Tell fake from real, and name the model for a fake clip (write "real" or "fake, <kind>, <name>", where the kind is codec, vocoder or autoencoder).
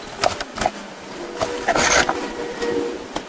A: real